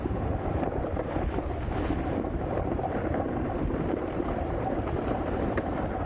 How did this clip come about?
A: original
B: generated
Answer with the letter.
B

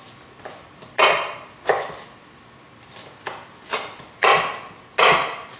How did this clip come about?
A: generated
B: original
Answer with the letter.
B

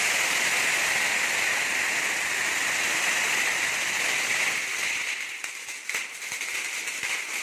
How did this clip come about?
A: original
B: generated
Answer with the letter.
A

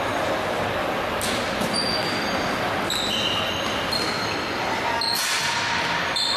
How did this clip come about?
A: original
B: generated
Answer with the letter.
A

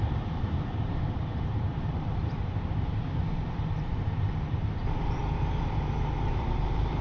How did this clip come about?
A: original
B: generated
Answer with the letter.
B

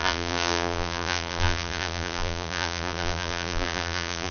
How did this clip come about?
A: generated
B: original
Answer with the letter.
A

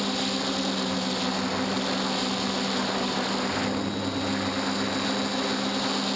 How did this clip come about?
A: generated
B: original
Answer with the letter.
B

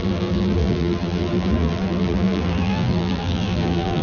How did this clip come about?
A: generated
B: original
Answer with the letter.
A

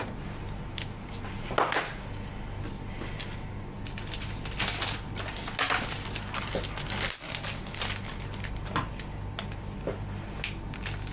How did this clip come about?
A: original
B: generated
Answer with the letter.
A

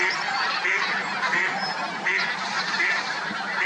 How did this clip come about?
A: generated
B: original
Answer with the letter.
B